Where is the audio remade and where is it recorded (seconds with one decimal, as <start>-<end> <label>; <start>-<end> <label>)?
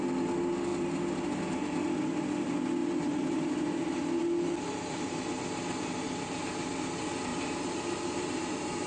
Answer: 0.0-2.8 recorded; 2.8-3.4 remade; 3.4-4.2 recorded; 4.2-5.1 remade; 5.1-7.3 recorded; 7.3-8.9 remade